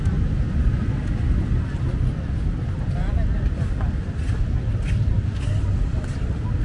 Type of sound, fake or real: real